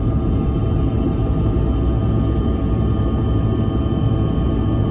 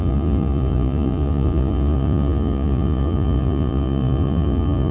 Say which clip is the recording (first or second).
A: first